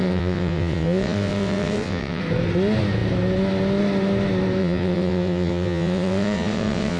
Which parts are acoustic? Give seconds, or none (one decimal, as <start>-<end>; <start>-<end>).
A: 2.2-4.6